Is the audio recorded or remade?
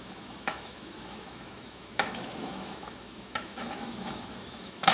remade